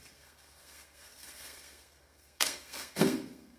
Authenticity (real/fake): fake